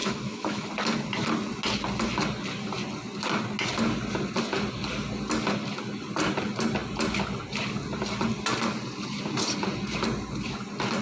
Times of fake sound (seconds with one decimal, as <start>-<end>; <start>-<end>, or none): 0.0-0.7